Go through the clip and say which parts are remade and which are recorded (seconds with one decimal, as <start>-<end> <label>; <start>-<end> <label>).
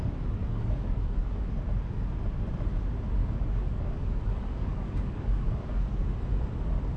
0.0-0.4 recorded; 0.4-1.5 remade; 1.5-3.2 recorded; 3.2-6.0 remade; 6.0-7.0 recorded